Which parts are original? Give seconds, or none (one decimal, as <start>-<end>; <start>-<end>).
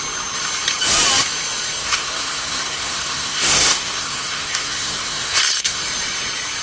0.0-1.8; 5.8-6.6